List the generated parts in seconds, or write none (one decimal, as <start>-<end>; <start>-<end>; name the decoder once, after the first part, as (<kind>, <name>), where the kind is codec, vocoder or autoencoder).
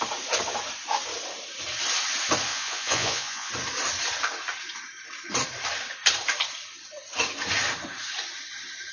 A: 2.5-3.5 (vocoder, Vocos)